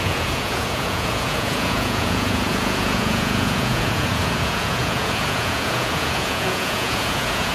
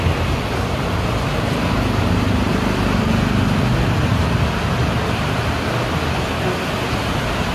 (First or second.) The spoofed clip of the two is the first